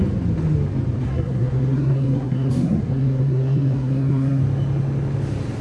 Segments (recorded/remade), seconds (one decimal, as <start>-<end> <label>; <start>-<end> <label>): 0.0-1.0 recorded; 1.0-4.4 remade; 4.4-5.6 recorded